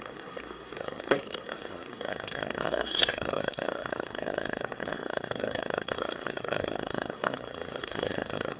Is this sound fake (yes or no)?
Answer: yes